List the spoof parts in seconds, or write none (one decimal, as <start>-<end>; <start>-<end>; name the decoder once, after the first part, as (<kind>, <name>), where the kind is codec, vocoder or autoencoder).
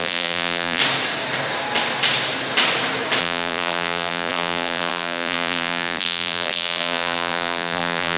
0.0-0.8 (vocoder, BigVGAN v2); 3.2-8.2